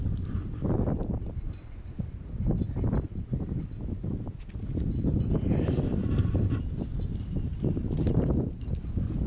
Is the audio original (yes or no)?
yes